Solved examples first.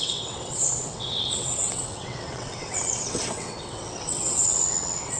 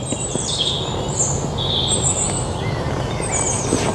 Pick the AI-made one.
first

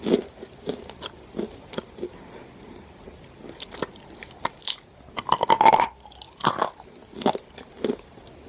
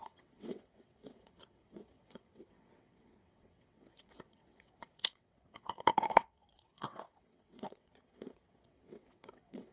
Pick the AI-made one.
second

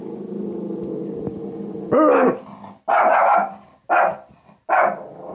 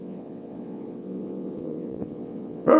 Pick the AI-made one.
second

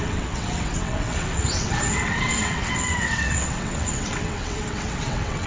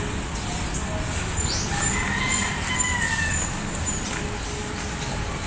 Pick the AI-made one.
first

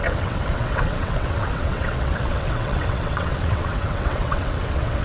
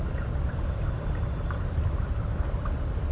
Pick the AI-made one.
first